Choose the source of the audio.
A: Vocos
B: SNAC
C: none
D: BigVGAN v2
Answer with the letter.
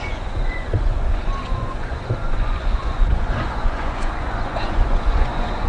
A